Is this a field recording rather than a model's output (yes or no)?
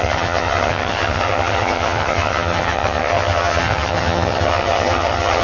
no